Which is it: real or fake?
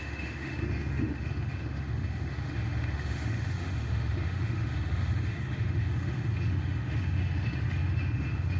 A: fake